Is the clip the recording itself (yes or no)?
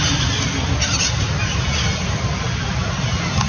yes